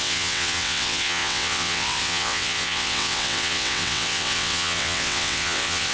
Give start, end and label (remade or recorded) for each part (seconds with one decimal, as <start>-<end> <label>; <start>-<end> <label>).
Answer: 0.0-5.9 remade